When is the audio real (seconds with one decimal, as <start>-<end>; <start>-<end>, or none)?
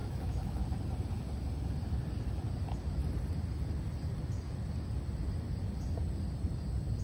0.6-7.0